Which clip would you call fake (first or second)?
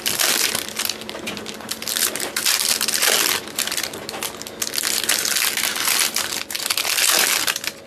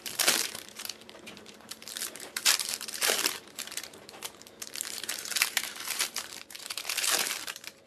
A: second